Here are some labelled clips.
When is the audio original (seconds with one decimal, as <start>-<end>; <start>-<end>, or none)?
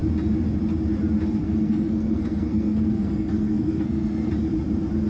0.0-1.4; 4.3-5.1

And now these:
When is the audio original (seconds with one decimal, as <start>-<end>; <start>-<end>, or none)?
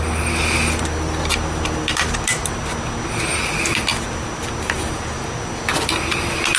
0.0-6.6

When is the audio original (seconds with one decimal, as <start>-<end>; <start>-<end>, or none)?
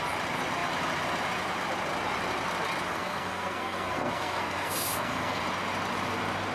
0.0-2.9; 5.4-6.5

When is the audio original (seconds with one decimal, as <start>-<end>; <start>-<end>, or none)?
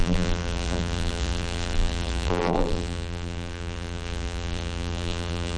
none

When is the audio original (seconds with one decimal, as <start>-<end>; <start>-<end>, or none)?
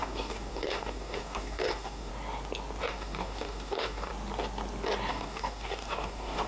2.1-2.8; 4.1-5.1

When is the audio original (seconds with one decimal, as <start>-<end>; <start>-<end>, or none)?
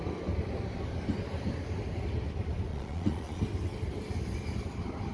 0.0-2.7; 3.4-5.1